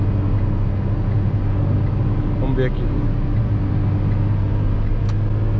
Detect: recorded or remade recorded